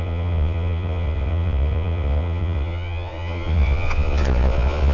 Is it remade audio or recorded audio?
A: remade